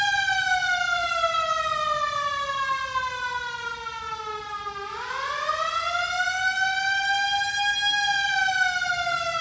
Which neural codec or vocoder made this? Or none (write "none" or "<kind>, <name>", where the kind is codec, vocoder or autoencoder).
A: none